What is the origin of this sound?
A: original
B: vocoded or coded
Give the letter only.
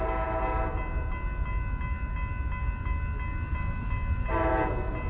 A